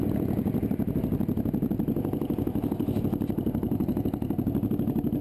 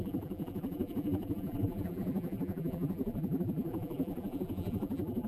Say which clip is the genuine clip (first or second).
first